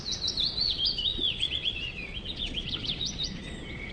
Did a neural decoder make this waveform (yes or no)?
yes